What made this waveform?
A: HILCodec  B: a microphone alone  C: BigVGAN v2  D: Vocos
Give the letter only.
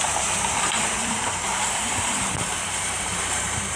C